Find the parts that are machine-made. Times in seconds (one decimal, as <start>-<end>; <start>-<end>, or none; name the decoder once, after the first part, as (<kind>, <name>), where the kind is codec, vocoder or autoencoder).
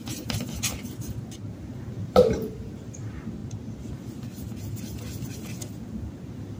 2.0-3.0 (vocoder, BigVGAN v2)